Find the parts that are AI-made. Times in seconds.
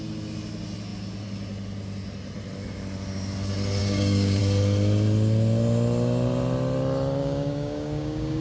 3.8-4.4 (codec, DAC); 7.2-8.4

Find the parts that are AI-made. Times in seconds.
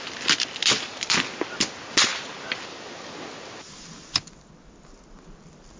none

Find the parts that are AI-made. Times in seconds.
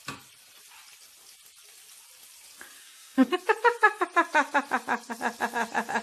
2.8-3.3 (codec, DAC)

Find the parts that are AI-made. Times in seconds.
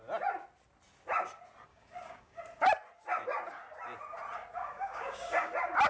1.7-2.4 (codec, DAC); 4.6-5.5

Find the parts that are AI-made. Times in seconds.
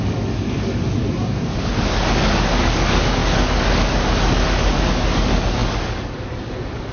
0.0-6.9 (codec, DAC)